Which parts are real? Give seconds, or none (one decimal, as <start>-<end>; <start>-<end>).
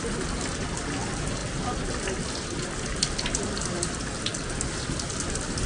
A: 0.0-5.7